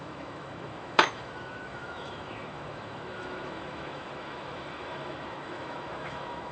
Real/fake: fake